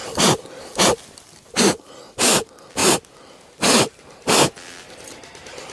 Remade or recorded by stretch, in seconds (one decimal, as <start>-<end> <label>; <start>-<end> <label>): 0.0-1.9 remade; 1.9-5.7 recorded